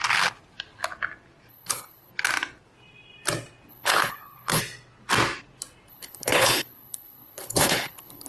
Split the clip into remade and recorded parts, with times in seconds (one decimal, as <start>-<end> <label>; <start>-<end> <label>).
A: 0.0-1.5 recorded; 1.5-2.1 remade; 2.1-3.7 recorded; 3.7-4.6 remade; 4.6-5.9 recorded; 5.9-8.3 remade

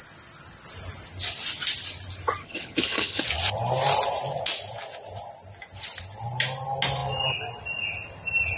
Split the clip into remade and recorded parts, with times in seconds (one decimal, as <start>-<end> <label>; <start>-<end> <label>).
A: 0.0-2.4 recorded; 2.4-3.2 remade; 3.2-8.6 recorded

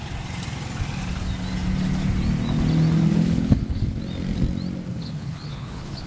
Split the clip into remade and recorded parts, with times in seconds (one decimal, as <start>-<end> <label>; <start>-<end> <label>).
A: 0.0-3.1 recorded; 3.1-4.0 remade; 4.0-4.9 recorded; 4.9-6.1 remade

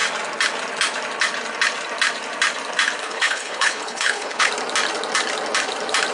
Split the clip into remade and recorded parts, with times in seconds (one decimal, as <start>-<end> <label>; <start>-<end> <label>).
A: 0.0-3.0 recorded; 3.0-4.5 remade; 4.5-6.1 recorded

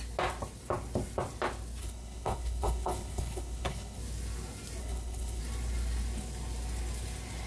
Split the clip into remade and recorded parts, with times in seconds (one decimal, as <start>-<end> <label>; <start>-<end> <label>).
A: 0.0-1.8 recorded; 1.8-4.0 remade; 4.0-4.8 recorded; 4.8-5.4 remade; 5.4-7.5 recorded

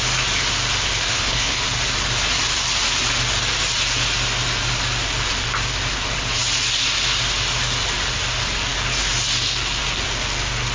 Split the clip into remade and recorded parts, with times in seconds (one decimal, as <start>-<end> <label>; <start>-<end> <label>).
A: 0.0-1.1 recorded; 1.1-1.6 remade; 1.6-10.7 recorded

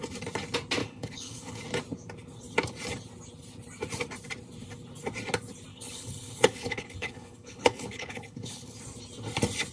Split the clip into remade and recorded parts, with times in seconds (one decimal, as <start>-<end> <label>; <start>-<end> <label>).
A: 0.0-0.8 recorded; 0.8-1.6 remade; 1.6-5.7 recorded; 5.7-8.8 remade; 8.8-9.7 recorded